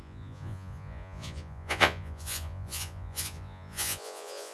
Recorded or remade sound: remade